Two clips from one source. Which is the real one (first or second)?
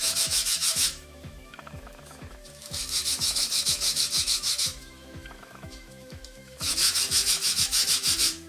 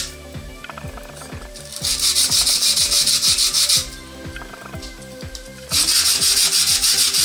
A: second